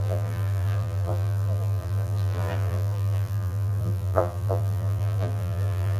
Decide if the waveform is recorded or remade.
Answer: remade